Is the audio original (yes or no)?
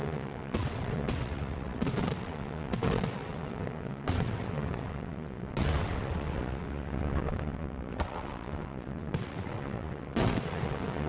no